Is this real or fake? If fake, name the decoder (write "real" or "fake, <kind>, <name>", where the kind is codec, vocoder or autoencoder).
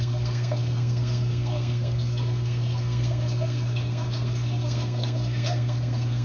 fake, codec, SNAC